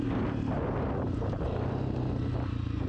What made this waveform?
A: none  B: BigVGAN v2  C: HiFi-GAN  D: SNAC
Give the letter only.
A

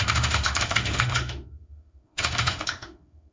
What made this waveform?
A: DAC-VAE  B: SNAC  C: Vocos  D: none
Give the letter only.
A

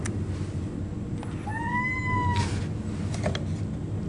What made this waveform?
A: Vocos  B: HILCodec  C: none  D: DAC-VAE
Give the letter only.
C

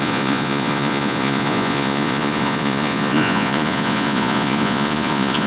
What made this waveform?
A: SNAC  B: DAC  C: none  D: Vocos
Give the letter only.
D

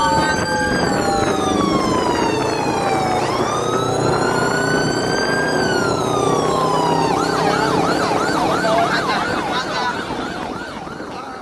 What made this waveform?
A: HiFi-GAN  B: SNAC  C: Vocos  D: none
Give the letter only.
D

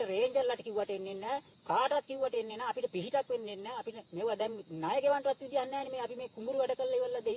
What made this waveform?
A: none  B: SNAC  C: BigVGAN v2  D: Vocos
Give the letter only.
D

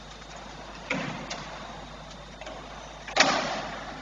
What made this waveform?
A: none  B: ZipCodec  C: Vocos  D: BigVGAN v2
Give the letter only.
A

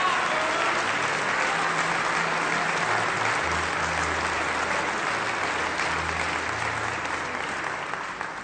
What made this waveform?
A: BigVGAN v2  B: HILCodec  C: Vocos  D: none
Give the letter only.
D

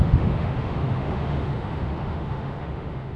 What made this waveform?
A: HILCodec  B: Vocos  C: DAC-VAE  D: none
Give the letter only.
C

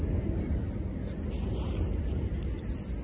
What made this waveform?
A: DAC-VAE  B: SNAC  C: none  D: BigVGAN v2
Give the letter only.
C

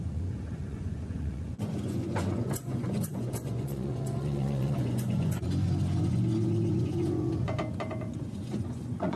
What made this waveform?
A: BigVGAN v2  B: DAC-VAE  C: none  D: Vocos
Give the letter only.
D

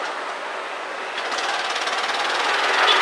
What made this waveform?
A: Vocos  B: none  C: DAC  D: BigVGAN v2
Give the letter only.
A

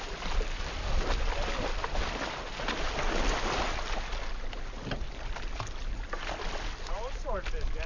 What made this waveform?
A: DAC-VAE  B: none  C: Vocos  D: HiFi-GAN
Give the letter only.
B